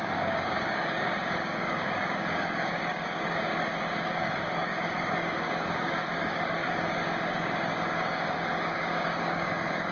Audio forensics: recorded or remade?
remade